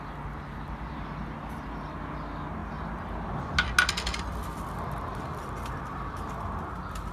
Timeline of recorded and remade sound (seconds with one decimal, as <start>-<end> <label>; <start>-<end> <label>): 0.0-7.1 recorded